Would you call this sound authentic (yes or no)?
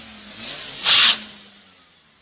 yes